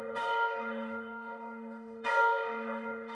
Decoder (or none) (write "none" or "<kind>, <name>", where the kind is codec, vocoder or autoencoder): autoencoder, DAC-VAE